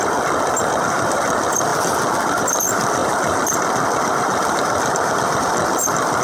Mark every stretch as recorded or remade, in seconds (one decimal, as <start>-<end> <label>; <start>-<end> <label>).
0.0-1.7 remade; 1.7-2.4 recorded; 2.4-6.2 remade